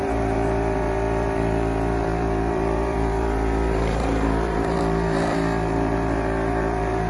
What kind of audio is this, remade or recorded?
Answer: remade